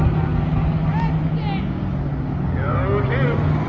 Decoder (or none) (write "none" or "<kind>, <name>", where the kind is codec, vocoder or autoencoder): none